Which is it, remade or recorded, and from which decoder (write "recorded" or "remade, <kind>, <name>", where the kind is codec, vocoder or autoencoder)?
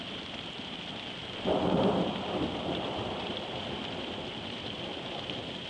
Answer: remade, vocoder, BigVGAN v2